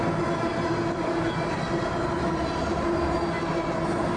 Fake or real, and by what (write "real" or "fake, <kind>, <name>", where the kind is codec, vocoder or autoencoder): real